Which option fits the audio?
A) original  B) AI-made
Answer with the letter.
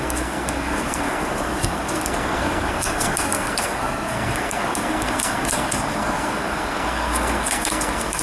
B